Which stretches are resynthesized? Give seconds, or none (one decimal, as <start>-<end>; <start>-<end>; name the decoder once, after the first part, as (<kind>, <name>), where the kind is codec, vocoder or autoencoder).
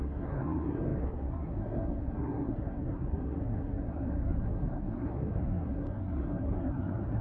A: 0.0-7.2 (codec, SNAC)